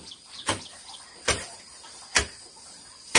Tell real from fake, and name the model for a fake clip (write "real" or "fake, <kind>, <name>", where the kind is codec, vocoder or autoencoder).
real